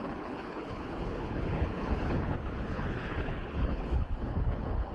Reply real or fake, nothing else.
fake